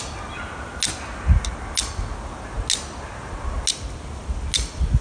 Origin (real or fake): real